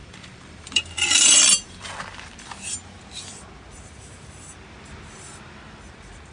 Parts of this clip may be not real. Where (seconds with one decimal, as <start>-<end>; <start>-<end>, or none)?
0.0-2.0